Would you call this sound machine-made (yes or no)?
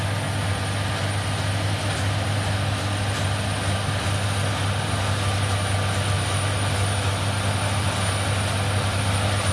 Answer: no